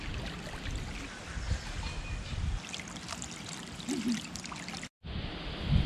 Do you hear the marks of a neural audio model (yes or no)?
no